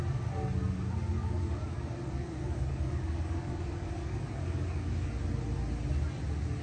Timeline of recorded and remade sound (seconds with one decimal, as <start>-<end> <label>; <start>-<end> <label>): 0.0-1.2 recorded; 1.2-5.2 remade; 5.2-6.6 recorded